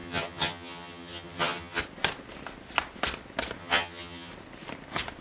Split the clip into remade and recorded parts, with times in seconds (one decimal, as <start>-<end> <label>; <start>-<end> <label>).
0.0-1.8 remade; 1.8-3.6 recorded; 3.6-4.3 remade; 4.3-5.2 recorded